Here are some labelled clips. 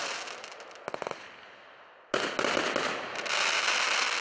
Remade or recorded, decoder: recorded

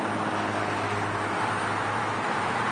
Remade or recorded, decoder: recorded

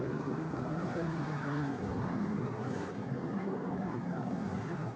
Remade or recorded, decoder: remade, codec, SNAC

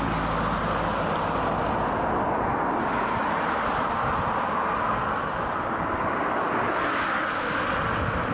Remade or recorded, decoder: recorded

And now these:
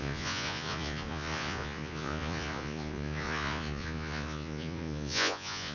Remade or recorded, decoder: remade, vocoder, Vocos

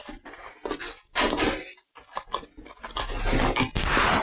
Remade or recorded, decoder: recorded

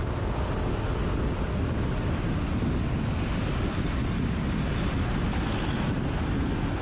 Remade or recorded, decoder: recorded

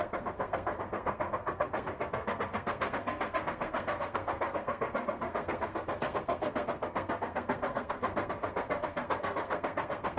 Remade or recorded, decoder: remade, codec, SNAC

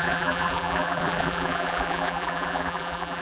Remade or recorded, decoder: remade, vocoder, BigVGAN v2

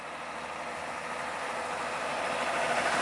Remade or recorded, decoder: recorded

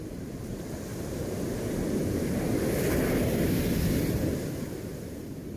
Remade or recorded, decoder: recorded